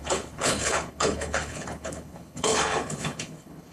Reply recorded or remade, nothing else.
remade